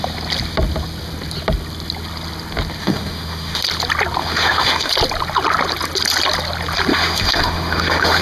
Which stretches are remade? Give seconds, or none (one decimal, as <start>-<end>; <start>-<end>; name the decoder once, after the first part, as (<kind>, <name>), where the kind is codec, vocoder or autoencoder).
2.8-3.6 (autoencoder, DAC-VAE); 4.2-4.9; 6.9-8.2